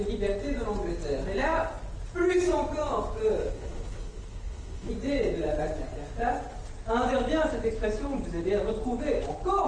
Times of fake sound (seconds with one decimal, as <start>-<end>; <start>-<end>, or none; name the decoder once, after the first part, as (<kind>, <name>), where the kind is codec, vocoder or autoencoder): 3.4-4.9 (codec, HILCodec)